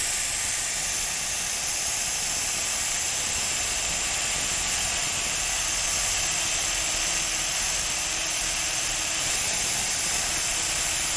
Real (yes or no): no